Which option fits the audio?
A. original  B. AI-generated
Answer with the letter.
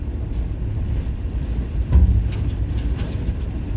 A